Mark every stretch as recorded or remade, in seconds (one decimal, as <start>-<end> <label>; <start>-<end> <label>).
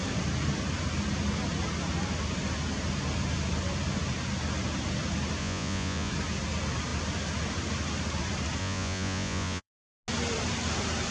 0.0-5.4 recorded; 5.4-6.1 remade; 6.1-8.6 recorded; 8.6-9.7 remade; 9.7-11.1 recorded